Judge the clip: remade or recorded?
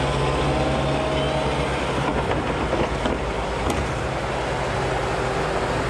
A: recorded